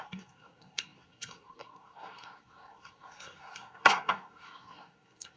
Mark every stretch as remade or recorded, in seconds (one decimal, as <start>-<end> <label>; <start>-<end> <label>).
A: 0.0-5.4 remade